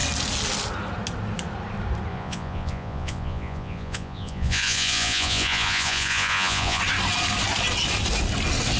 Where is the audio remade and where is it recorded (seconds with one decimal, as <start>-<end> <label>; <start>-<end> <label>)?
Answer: 0.0-2.1 recorded; 2.1-6.8 remade; 6.8-8.8 recorded